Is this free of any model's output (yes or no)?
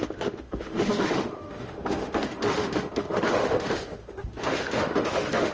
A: no